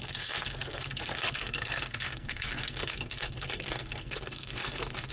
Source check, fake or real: fake